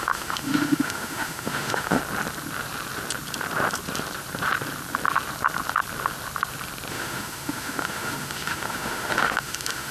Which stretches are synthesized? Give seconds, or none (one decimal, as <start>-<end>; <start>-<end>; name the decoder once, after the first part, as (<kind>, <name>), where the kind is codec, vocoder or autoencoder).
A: 0.0-2.0 (autoencoder, DAC-VAE); 6.9-9.9